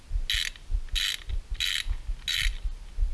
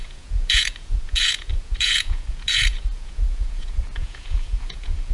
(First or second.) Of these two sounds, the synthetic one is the second